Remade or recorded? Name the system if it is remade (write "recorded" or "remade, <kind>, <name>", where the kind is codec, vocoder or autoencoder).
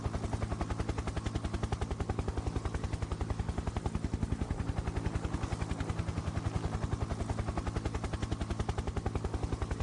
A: recorded